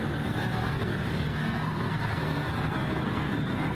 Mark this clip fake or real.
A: fake